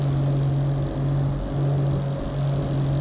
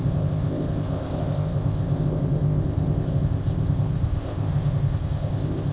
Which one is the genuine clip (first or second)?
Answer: first